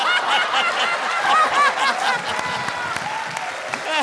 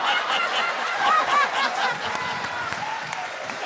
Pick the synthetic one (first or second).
second